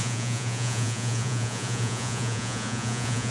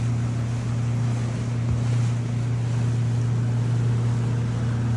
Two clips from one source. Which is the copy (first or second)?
first